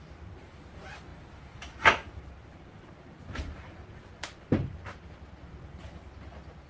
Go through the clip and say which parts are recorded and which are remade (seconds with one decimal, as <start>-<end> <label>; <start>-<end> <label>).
0.0-6.7 recorded